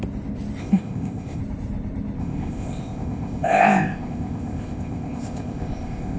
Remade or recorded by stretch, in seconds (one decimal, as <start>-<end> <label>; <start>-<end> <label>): 0.0-0.6 recorded; 0.6-1.4 remade; 1.4-2.2 recorded; 2.2-6.2 remade

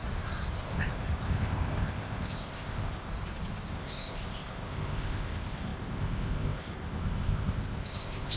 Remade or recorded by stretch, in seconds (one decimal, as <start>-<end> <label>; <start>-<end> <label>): 0.0-0.6 recorded; 0.6-3.1 remade; 3.1-3.7 recorded; 3.7-8.4 remade

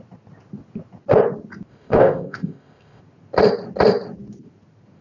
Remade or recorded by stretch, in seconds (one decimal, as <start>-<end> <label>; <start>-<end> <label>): 0.0-1.7 recorded; 1.7-3.0 remade; 3.0-5.0 recorded

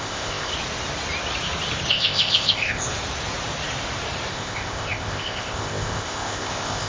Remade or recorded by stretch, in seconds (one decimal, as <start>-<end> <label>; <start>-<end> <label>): 0.0-0.5 remade; 0.5-1.9 recorded; 1.9-2.9 remade; 2.9-4.3 recorded; 4.3-6.9 remade